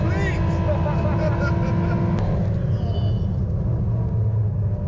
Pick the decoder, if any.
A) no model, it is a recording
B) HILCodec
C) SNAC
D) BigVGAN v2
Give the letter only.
A